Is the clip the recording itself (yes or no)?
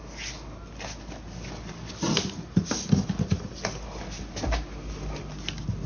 yes